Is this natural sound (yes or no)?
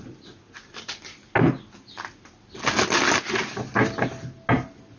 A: yes